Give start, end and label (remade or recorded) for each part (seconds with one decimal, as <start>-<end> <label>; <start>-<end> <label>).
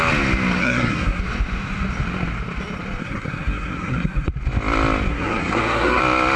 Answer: 0.0-0.6 recorded; 0.6-1.2 remade; 1.2-3.0 recorded; 3.0-4.3 remade; 4.3-5.1 recorded; 5.1-6.0 remade; 6.0-6.4 recorded